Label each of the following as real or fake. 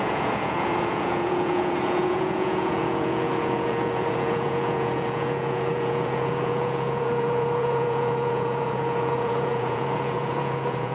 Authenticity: fake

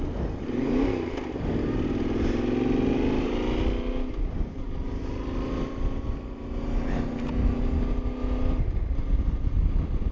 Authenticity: real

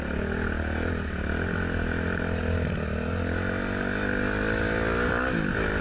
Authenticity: real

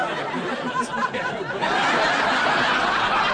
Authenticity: real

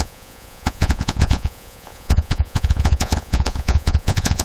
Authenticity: fake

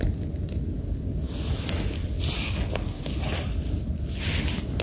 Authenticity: real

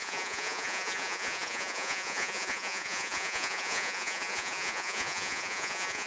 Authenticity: fake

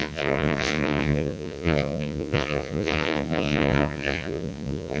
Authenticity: fake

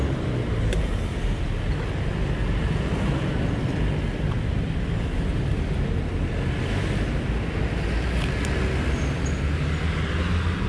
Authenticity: real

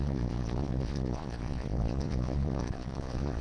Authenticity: fake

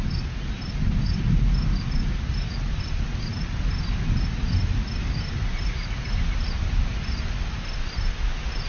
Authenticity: real